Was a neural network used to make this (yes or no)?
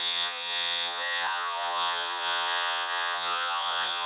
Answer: yes